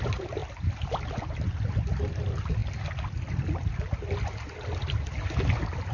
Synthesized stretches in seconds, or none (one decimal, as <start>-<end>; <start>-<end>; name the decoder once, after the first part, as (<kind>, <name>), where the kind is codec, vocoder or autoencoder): none

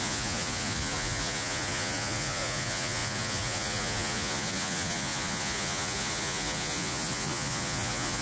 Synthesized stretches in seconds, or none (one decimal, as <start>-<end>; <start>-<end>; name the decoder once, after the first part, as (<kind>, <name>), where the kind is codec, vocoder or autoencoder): 0.0-8.2 (vocoder, Vocos)

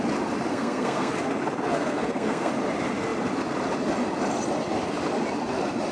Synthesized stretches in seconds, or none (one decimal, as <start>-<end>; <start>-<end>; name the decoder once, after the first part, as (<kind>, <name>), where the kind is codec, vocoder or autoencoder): 0.5-1.1 (codec, SNAC); 1.7-2.5

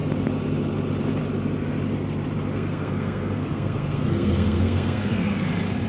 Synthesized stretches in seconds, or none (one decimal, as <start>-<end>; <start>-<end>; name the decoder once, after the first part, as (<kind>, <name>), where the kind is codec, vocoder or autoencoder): 2.5-5.5 (codec, SNAC)